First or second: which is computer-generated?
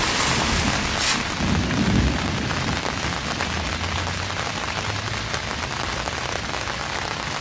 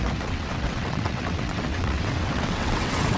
second